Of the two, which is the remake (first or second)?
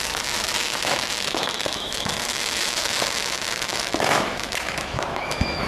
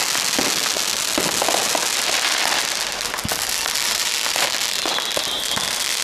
first